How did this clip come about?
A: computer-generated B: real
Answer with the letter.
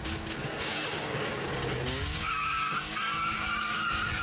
A